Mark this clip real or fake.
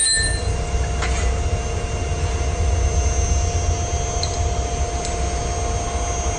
real